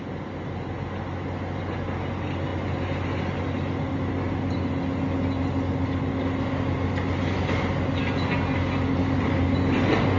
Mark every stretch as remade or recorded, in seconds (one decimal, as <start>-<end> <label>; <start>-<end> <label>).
0.0-10.2 recorded